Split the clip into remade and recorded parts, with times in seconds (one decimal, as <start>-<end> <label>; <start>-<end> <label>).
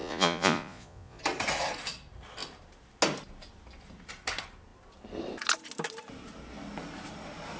0.0-1.2 remade; 1.2-7.6 recorded